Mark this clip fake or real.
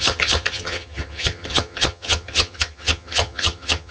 fake